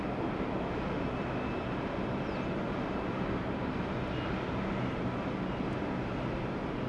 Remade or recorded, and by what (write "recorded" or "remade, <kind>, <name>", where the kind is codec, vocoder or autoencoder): recorded